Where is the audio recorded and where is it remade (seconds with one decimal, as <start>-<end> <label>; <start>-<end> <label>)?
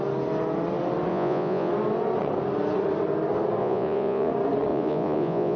0.0-1.1 recorded; 1.1-1.7 remade; 1.7-3.6 recorded; 3.6-4.3 remade; 4.3-4.7 recorded; 4.7-5.6 remade